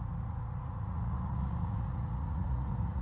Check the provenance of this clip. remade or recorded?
remade